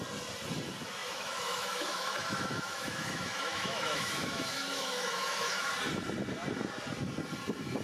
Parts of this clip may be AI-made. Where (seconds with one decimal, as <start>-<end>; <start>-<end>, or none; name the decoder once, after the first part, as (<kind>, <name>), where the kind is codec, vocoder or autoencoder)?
1.0-5.7 (autoencoder, DAC-VAE)